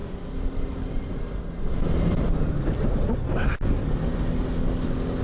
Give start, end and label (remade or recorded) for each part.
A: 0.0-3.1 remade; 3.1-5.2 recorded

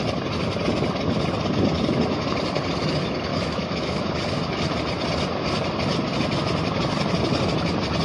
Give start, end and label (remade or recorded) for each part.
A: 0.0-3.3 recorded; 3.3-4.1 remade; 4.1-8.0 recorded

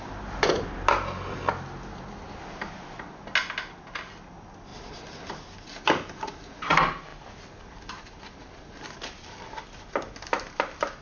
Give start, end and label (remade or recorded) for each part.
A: 0.0-7.1 recorded; 7.1-11.0 remade

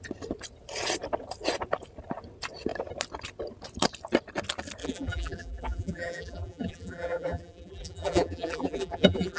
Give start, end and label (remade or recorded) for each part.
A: 0.0-4.8 recorded; 4.8-9.4 remade

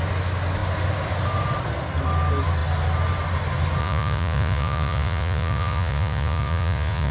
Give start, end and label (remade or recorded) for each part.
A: 0.0-3.8 recorded; 3.8-7.1 remade

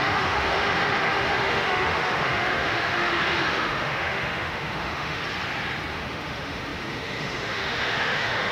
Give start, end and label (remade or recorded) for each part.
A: 0.0-5.2 remade; 5.2-5.9 recorded; 5.9-8.5 remade